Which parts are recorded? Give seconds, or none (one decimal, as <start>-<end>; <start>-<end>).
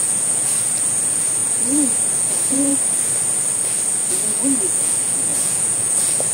2.7-4.1